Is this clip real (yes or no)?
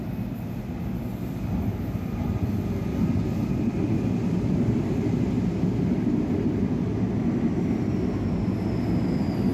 yes